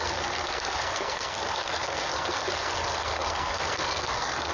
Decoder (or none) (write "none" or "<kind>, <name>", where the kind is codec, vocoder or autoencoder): codec, SNAC